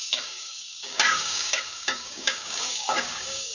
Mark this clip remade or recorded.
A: remade